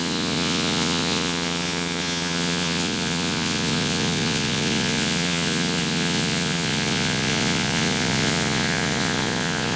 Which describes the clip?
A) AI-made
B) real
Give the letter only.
A